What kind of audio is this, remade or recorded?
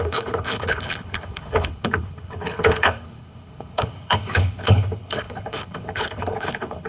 remade